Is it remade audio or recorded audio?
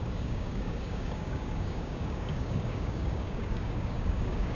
remade